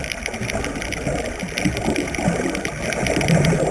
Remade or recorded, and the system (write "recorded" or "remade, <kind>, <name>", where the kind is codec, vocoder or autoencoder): recorded